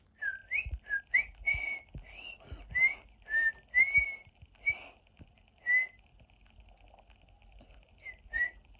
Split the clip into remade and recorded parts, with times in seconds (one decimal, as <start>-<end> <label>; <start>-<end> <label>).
0.0-8.8 recorded